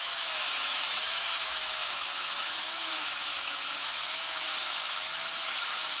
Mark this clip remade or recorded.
remade